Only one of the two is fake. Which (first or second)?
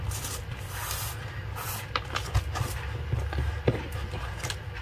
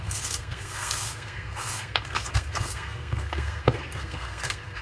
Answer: second